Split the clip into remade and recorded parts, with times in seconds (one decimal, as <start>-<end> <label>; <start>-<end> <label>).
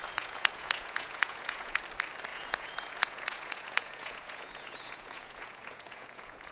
0.0-1.8 remade; 1.8-2.3 recorded; 2.3-6.5 remade